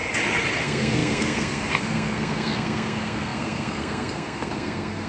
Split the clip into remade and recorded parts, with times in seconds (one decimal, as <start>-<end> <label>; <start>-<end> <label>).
0.0-0.6 recorded; 0.6-5.1 remade